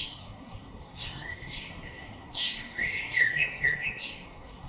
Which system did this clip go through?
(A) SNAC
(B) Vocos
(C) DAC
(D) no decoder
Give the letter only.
A